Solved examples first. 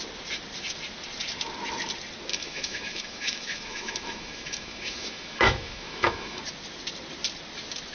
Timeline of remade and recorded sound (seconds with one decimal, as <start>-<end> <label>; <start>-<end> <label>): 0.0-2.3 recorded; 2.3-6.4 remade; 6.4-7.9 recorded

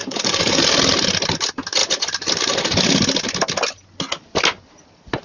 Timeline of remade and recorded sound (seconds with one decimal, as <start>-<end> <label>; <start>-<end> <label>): 0.0-0.6 remade; 0.6-5.2 recorded

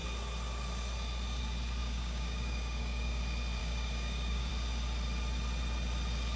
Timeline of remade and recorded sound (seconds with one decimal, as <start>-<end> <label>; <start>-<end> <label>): 0.0-1.8 recorded; 1.8-3.2 remade; 3.2-3.6 recorded; 3.6-4.5 remade; 4.5-6.4 recorded